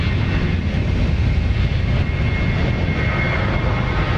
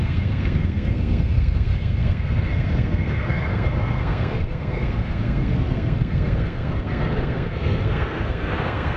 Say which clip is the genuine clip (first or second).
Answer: first